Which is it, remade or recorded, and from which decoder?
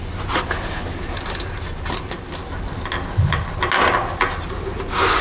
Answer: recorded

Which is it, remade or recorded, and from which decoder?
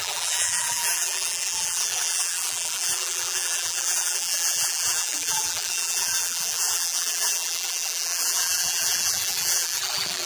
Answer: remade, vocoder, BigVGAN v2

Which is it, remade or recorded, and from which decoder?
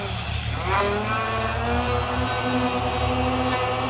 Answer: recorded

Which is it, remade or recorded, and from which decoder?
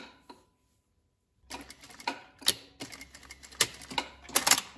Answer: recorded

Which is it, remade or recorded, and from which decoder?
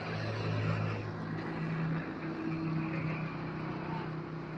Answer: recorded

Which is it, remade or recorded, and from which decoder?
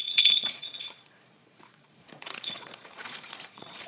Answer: remade, vocoder, Vocos